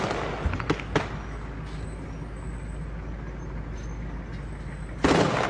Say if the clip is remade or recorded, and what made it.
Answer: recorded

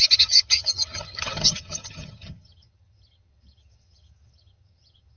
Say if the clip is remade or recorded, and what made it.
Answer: remade, vocoder, HiFi-GAN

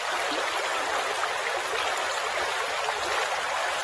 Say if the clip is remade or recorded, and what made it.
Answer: recorded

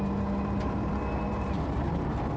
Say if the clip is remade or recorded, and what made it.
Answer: recorded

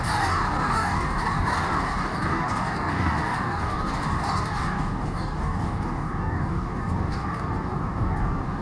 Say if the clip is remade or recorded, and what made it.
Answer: remade, codec, DAC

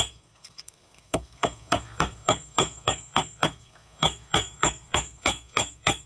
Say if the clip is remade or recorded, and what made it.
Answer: remade, codec, SNAC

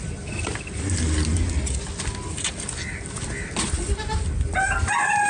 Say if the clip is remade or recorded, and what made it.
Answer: recorded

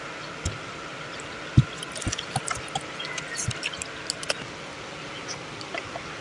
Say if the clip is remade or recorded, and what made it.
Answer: recorded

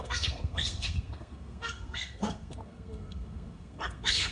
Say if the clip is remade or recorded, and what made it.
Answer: remade, codec, SNAC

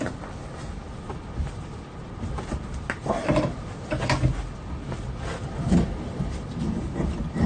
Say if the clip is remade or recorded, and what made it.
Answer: recorded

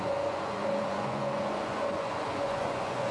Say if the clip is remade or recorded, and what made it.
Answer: remade, vocoder, Vocos